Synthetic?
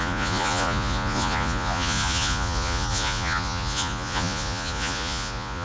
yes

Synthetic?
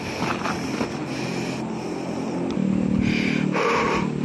no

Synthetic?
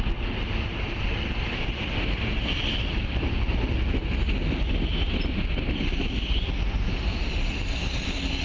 no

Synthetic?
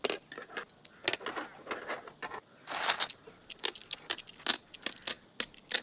no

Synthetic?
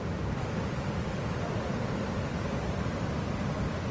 no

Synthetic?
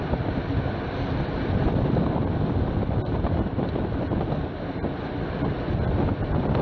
no